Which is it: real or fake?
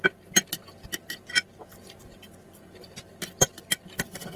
real